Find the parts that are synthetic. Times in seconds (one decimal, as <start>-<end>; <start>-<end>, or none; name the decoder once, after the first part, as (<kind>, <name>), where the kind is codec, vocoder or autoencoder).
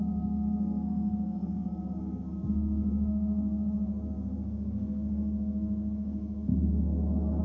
0.0-6.5 (codec, SNAC)